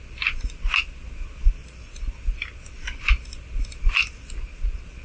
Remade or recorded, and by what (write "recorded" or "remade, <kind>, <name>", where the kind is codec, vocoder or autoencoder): recorded